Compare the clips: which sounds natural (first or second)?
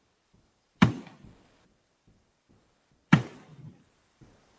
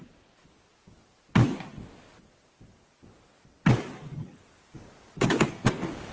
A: second